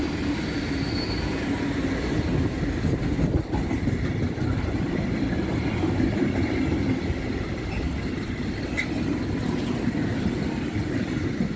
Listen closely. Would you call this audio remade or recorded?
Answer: recorded